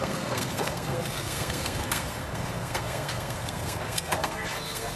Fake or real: fake